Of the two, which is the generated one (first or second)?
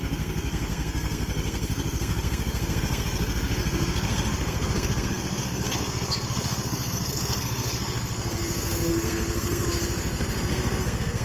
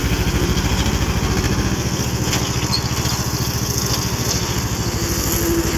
first